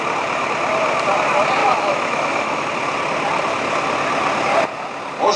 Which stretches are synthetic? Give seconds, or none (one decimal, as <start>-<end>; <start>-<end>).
1.6-2.7